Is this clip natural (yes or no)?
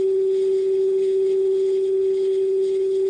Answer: no